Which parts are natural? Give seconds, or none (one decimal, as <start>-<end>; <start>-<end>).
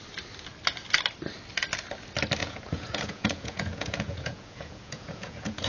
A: 0.0-2.4